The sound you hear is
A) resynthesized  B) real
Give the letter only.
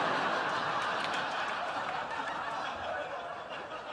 B